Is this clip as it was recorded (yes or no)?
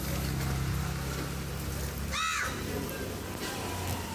yes